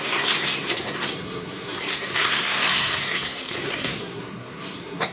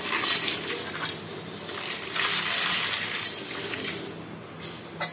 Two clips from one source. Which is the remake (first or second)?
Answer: first